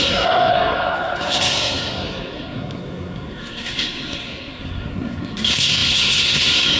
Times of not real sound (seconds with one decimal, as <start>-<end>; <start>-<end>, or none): 0.0-6.8